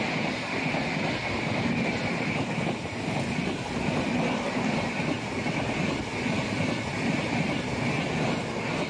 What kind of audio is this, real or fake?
real